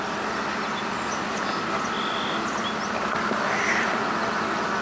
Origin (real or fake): real